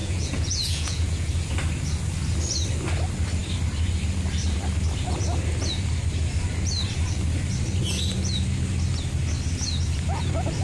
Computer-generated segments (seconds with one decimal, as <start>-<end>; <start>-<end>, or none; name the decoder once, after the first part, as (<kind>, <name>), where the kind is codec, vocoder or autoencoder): 0.0-1.3 (vocoder, Vocos)